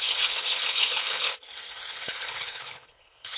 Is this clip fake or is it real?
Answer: fake